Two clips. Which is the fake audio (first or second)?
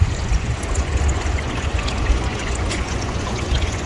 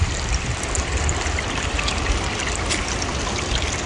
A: first